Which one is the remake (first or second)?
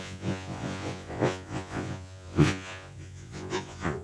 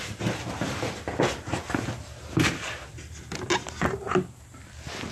first